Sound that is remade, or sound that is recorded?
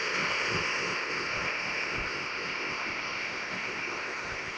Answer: remade